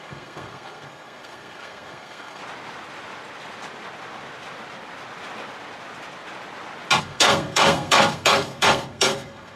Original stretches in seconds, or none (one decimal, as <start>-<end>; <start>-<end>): 2.4-7.0